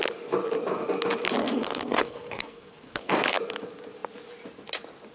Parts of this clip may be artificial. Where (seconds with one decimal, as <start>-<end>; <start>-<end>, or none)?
1.4-3.1